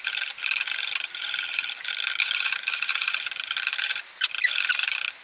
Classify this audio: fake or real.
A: fake